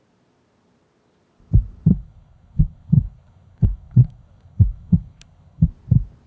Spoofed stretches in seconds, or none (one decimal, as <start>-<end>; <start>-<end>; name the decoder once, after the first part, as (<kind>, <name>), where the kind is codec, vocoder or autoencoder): 1.9-5.7 (codec, SNAC)